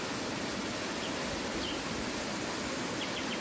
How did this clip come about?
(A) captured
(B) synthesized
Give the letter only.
A